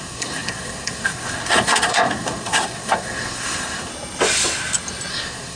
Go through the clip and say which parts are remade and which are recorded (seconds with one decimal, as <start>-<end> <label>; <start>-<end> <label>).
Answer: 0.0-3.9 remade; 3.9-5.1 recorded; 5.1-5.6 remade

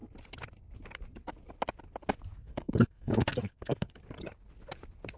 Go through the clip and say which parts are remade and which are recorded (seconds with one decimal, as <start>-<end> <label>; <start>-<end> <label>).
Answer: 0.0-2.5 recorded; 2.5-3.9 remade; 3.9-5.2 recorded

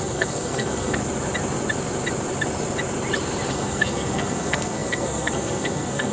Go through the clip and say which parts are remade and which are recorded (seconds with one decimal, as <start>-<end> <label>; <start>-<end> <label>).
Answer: 0.0-1.0 remade; 1.0-3.5 recorded; 3.5-6.1 remade

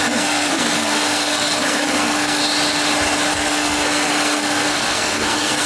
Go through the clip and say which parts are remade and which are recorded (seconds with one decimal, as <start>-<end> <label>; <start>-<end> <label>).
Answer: 0.0-2.4 remade; 2.4-3.3 recorded; 3.3-5.7 remade

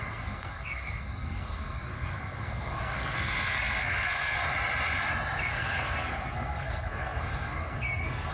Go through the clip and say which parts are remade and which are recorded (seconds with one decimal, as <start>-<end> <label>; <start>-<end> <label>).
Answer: 0.0-4.4 remade; 4.4-5.4 recorded; 5.4-8.3 remade